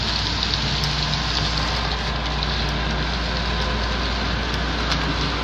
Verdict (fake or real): real